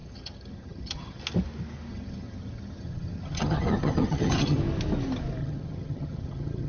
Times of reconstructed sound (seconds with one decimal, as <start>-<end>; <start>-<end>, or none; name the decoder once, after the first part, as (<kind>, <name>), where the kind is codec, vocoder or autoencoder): 0.0-1.2 (vocoder, HiFi-GAN); 1.9-4.6; 5.4-6.7